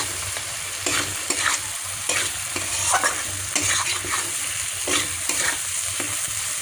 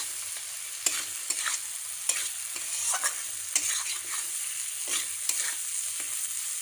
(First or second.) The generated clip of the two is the first